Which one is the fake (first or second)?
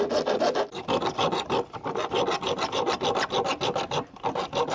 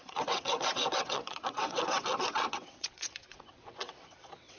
second